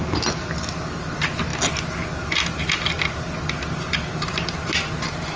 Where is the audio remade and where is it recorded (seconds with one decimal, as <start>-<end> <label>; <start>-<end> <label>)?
0.0-5.4 recorded